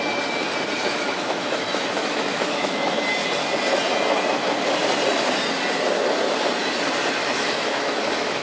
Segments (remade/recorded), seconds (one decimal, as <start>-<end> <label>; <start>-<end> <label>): 0.0-0.8 recorded; 0.8-3.0 remade; 3.0-7.2 recorded; 7.2-8.4 remade